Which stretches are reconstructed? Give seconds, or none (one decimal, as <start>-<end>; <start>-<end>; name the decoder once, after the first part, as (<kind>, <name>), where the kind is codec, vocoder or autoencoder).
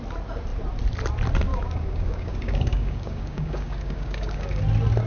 1.5-4.6 (codec, DAC)